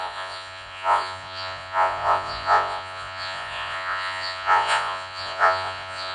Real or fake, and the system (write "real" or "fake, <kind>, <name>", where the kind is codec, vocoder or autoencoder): fake, vocoder, Vocos